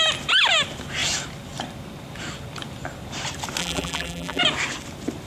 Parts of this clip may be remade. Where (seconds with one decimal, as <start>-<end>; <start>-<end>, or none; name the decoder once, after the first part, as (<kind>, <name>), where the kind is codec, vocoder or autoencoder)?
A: 3.6-4.4 (vocoder, BigVGAN v2)